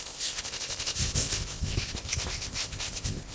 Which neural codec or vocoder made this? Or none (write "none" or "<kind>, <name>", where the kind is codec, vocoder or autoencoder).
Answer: codec, ZipCodec